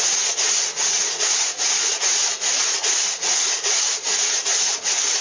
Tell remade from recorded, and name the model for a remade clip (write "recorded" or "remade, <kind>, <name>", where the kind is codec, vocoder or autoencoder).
remade, vocoder, Vocos